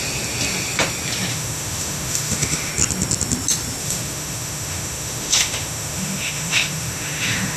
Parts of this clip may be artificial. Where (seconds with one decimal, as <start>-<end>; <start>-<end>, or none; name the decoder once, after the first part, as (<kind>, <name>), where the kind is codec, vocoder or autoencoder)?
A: 1.3-2.7 (autoencoder, DAC-VAE); 3.8-7.6